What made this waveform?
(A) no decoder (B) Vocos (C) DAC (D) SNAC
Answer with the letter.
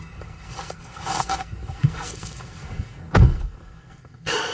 D